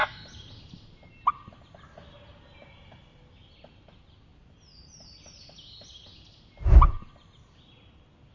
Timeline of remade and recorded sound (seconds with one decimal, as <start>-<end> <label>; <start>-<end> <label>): 0.0-8.3 recorded